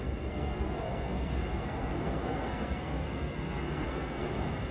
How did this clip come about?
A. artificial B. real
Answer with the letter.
A